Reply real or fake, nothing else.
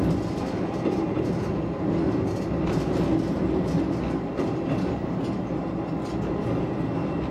real